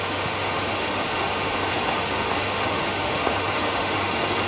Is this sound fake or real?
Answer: fake